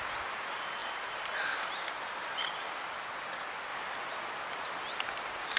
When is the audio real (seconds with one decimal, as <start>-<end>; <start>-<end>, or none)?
0.0-0.8; 3.0-5.6